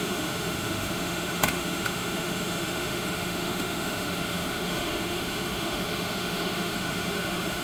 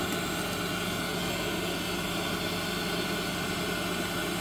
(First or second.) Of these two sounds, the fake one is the first